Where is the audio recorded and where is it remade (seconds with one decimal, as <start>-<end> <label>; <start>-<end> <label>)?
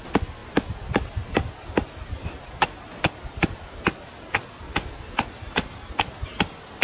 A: 0.0-6.8 recorded